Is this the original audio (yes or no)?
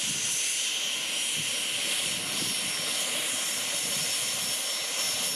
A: yes